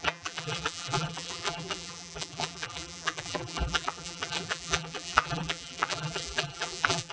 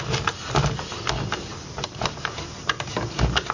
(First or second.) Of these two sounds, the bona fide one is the second